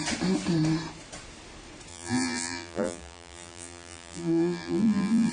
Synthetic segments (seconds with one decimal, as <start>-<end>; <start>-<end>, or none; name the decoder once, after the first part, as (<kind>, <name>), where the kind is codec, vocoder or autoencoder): 1.9-5.3 (vocoder, BigVGAN v2)